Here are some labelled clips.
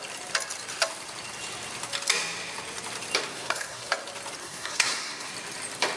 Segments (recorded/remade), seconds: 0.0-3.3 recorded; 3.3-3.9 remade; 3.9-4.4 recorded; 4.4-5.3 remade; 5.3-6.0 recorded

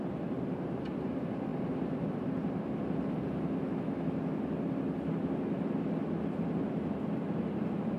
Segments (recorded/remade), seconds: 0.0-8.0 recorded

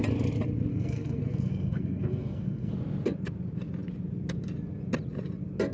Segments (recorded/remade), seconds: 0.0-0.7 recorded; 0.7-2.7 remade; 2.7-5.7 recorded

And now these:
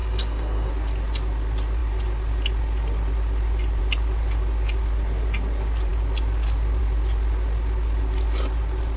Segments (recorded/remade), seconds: 0.0-0.7 remade; 0.7-9.0 recorded

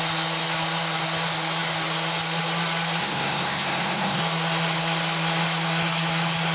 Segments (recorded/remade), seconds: 0.0-3.0 recorded; 3.0-4.2 remade; 4.2-6.5 recorded